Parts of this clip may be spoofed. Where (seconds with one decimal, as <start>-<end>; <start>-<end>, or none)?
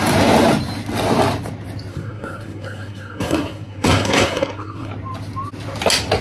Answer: 1.9-4.9